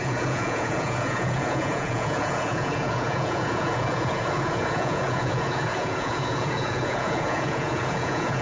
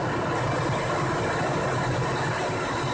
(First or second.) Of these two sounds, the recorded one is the second